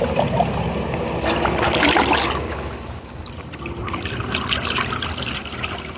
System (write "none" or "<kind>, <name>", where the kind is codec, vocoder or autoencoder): none